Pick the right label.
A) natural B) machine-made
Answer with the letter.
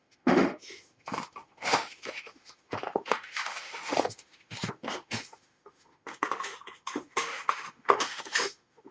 B